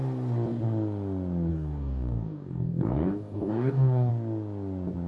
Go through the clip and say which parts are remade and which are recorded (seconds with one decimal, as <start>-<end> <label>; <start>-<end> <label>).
0.0-1.5 recorded; 1.5-4.1 remade; 4.1-5.1 recorded